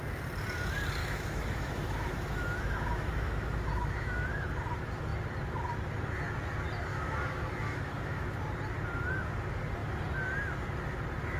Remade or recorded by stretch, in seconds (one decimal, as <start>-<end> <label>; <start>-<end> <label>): 0.0-1.0 recorded; 1.0-4.5 remade; 4.5-6.9 recorded; 6.9-8.4 remade; 8.4-11.4 recorded